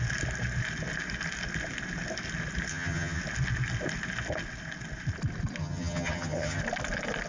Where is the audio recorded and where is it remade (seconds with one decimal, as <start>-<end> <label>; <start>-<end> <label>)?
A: 0.0-2.7 recorded; 2.7-3.2 remade; 3.2-5.6 recorded; 5.6-6.6 remade; 6.6-7.3 recorded